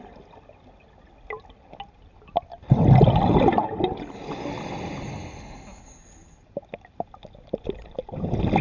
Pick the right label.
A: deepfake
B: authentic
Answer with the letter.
B